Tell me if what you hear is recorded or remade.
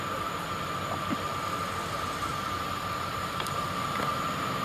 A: recorded